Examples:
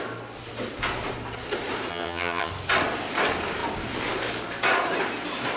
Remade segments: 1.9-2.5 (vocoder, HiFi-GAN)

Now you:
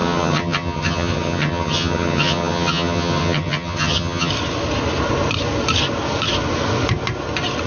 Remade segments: 0.0-4.3 (vocoder, HiFi-GAN)

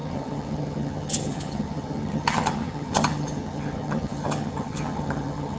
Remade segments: 0.0-5.6 (vocoder, HiFi-GAN)

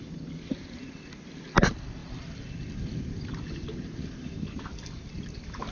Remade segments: none

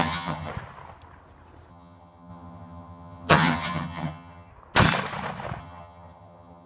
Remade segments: 0.0-0.5 (vocoder, HiFi-GAN); 1.7-4.5; 5.6-6.7

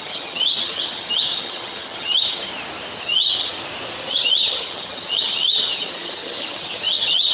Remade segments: 0.0-2.5 (vocoder, HiFi-GAN); 3.0-3.5; 4.1-7.3